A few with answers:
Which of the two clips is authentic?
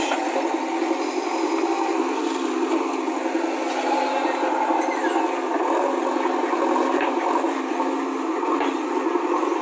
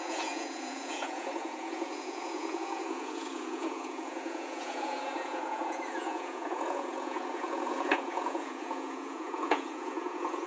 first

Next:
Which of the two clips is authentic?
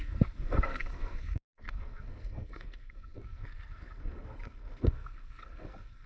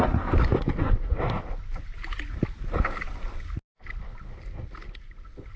second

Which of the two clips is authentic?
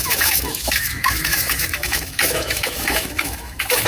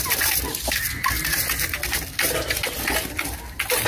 second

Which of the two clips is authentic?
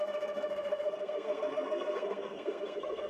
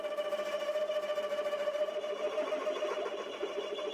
second